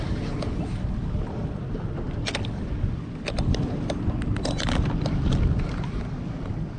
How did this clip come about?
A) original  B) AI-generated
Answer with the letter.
A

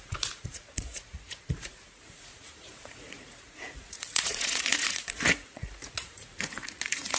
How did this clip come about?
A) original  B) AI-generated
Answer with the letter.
B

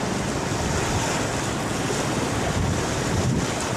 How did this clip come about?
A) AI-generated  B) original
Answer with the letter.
B